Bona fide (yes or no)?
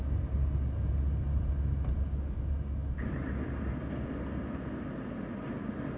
yes